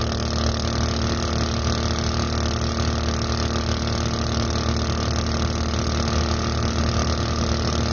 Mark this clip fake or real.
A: real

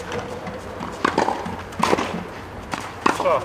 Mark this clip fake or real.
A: real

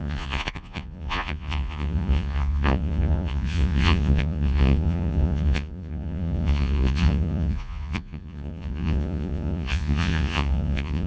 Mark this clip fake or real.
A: fake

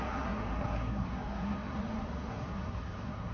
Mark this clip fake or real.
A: fake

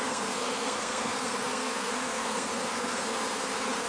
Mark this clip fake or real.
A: fake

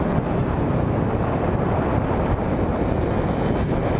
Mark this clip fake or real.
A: fake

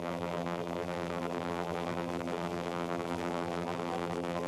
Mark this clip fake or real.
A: fake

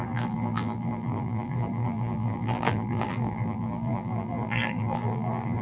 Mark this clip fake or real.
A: fake